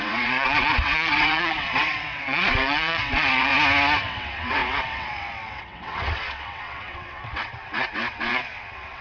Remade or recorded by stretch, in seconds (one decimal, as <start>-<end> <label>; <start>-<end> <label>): 0.0-3.5 remade; 3.5-4.0 recorded; 4.0-9.0 remade